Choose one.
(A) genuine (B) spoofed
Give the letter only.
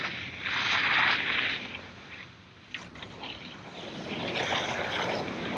A